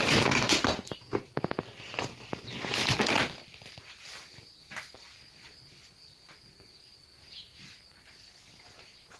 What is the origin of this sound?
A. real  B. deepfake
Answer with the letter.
A